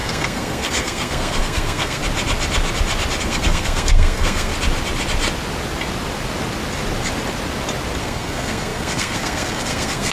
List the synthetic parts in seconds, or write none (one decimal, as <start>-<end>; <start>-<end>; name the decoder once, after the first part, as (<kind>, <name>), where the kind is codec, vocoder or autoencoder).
0.0-2.0 (codec, SNAC); 3.2-4.5; 8.0-10.1